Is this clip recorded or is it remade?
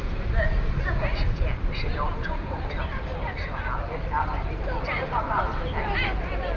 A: recorded